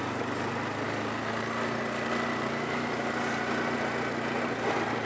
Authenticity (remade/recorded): recorded